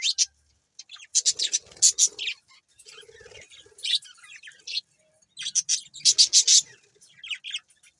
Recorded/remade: recorded